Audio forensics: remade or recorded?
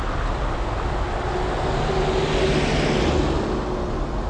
recorded